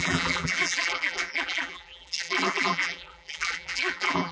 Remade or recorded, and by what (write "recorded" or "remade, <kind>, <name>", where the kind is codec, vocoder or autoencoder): remade, vocoder, BigVGAN v2